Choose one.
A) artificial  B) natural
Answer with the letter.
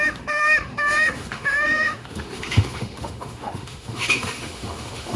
A